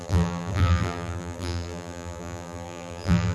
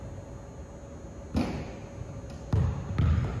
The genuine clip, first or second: second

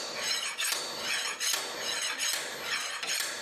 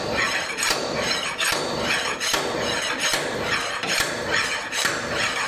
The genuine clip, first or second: first